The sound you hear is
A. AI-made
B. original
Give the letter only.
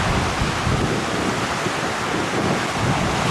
B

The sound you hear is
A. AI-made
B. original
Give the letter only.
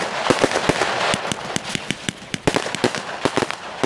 B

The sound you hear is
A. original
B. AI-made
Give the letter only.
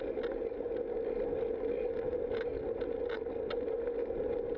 A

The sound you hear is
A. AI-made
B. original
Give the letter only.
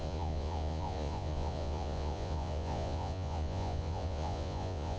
A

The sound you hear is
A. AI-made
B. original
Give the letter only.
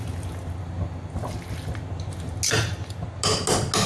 B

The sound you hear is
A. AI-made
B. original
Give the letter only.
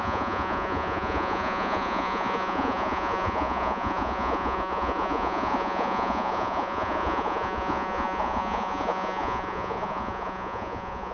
A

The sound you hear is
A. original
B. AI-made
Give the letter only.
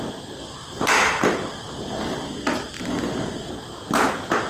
A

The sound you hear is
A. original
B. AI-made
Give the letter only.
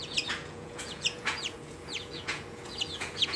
B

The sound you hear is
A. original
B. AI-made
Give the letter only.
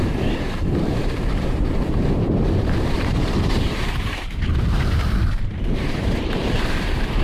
B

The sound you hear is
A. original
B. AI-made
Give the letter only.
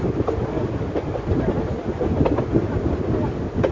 A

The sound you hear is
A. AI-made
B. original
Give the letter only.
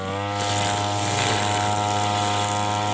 B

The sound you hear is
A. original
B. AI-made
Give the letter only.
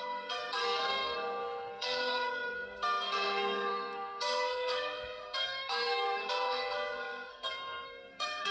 B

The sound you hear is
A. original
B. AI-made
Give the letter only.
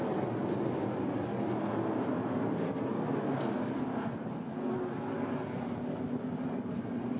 A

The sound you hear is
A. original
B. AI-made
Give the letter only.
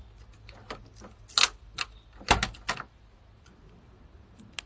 A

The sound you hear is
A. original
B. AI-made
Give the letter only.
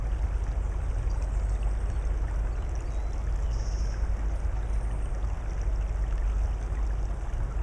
A